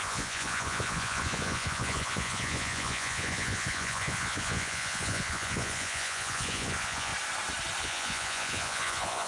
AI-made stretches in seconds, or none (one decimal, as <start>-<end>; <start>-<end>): 0.0-7.1; 7.8-9.3